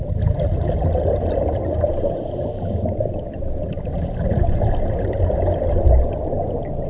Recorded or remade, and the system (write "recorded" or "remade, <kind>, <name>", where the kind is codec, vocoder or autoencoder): recorded